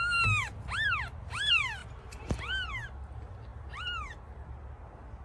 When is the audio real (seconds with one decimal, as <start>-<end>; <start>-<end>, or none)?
0.0-1.8; 2.7-5.2